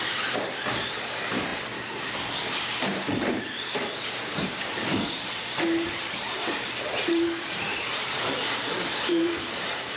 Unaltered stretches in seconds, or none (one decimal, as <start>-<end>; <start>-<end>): 1.5-2.5